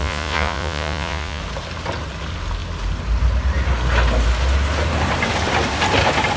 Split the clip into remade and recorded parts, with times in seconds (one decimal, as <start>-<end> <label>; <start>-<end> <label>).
0.0-1.4 remade; 1.4-6.4 recorded